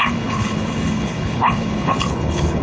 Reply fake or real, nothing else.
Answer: fake